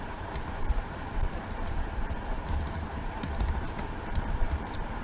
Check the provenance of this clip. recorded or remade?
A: remade